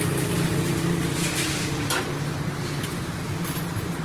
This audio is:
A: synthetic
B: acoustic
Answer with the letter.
B